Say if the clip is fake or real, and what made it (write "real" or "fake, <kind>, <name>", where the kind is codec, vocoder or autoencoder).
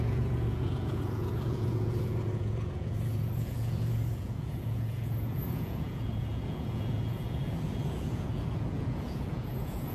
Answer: fake, vocoder, Vocos